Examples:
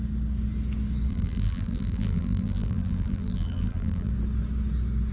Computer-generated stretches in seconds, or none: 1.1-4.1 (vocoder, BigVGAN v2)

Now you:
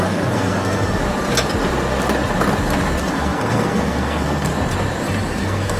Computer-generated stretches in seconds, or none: 0.0-1.0 (codec, SNAC); 3.0-4.5; 5.3-5.8

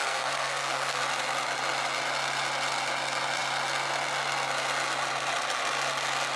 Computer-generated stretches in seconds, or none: 0.0-1.0 (codec, SNAC)